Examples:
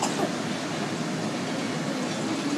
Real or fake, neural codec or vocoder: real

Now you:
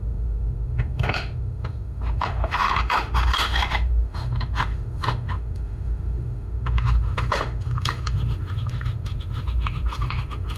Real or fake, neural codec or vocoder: fake, autoencoder, DAC-VAE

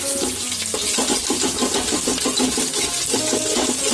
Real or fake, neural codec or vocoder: real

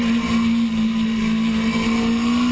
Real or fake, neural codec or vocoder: real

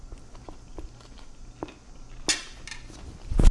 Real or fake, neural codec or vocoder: real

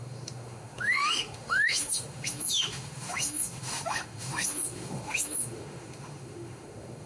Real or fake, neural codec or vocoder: fake, autoencoder, DAC-VAE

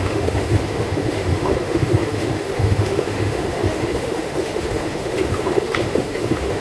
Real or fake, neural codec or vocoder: fake, autoencoder, DAC-VAE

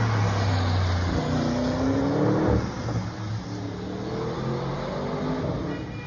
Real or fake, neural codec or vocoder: real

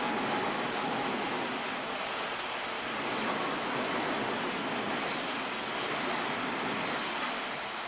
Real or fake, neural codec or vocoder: real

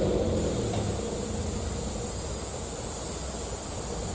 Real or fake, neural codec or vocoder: real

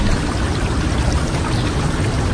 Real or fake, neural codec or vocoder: real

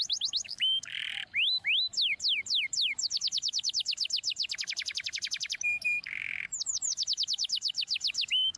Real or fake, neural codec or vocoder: fake, autoencoder, DAC-VAE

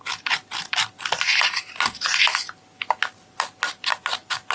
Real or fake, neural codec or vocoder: real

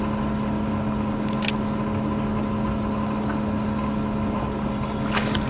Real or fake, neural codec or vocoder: real